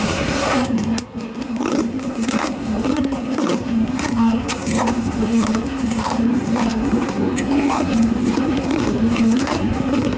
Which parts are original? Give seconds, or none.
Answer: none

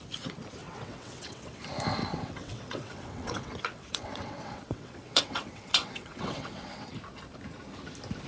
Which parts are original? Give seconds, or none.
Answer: 0.0-0.6; 1.6-2.0; 6.9-8.3

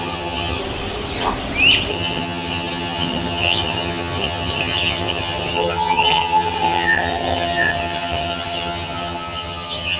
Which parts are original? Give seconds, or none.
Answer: 0.6-1.9

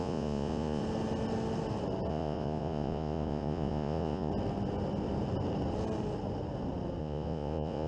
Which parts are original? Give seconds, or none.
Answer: 0.8-2.1; 4.3-7.0

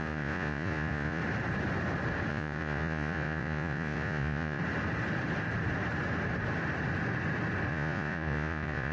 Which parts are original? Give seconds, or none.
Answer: 1.2-2.3; 4.6-7.7

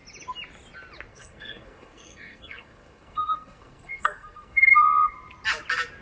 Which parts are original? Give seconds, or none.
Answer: 0.0-1.1; 4.7-6.0

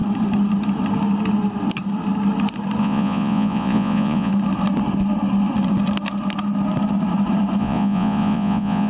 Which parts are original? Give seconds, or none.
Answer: 0.0-2.8; 4.3-7.6